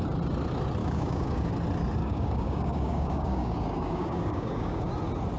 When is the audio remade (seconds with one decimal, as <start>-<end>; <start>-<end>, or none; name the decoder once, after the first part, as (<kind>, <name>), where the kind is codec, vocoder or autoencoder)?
0.8-1.5 (codec, DAC); 2.0-4.9